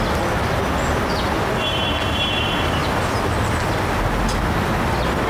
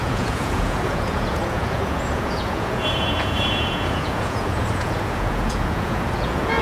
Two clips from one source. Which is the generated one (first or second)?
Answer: second